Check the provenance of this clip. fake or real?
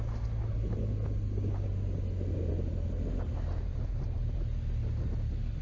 real